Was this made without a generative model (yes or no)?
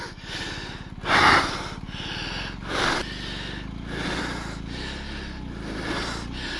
yes